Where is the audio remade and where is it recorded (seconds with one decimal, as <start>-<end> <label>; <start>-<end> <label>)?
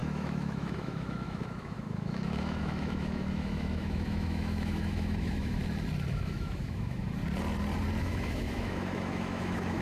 0.0-5.6 remade; 5.6-6.1 recorded; 6.1-7.2 remade; 7.2-8.0 recorded; 8.0-9.8 remade